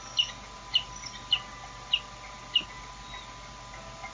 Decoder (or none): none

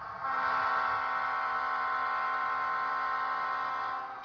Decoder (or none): none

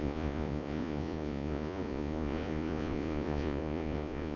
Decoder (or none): vocoder, Vocos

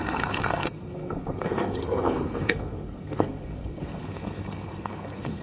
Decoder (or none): codec, SNAC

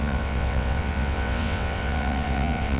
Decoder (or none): vocoder, WaveNeXt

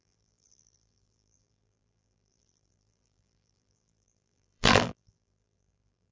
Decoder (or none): vocoder, BigVGAN v2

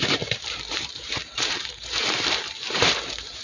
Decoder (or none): vocoder, BigVGAN v2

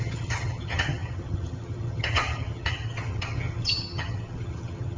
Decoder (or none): vocoder, HiFi-GAN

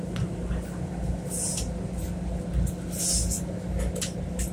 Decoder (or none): none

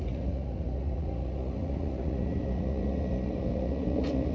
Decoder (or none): vocoder, Vocos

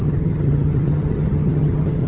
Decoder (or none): vocoder, HiFi-GAN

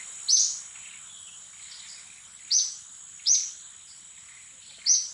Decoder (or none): none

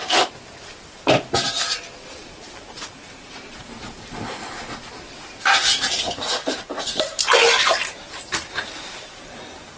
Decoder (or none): vocoder, BigVGAN v2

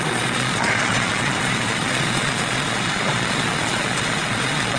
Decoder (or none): vocoder, Vocos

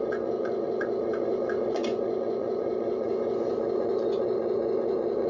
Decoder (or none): vocoder, Vocos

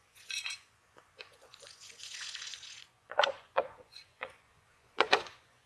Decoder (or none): vocoder, Vocos